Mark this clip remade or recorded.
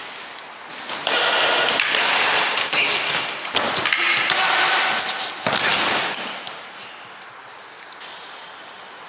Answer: recorded